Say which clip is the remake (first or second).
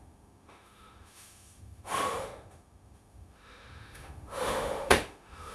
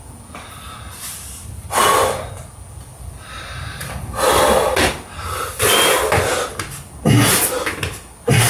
first